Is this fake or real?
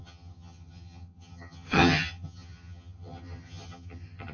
fake